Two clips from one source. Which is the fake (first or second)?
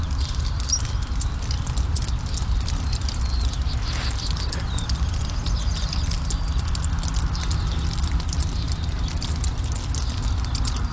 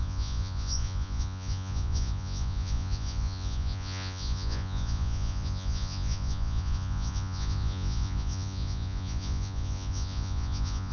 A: second